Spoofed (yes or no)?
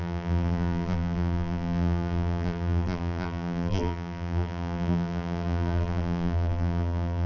yes